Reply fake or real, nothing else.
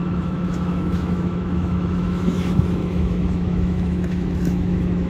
fake